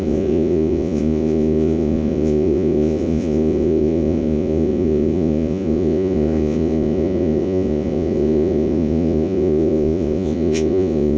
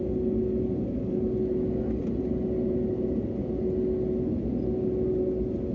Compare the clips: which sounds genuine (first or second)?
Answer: second